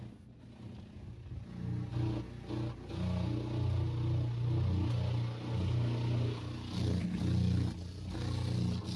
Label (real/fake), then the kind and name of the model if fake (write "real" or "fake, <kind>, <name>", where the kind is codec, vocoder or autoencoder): real